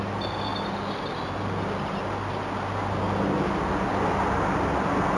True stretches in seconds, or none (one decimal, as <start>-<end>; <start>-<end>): 0.0-0.5; 1.3-5.2